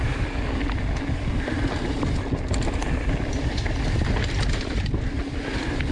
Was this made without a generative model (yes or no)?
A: yes